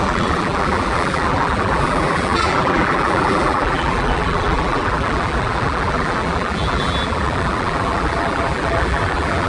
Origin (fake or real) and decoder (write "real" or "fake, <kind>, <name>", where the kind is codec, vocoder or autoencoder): fake, vocoder, BigVGAN v2